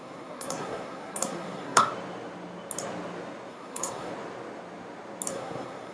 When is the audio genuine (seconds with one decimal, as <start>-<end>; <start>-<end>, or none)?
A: 1.9-3.5; 4.1-5.3